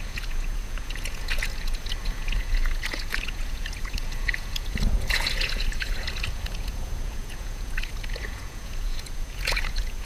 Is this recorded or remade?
remade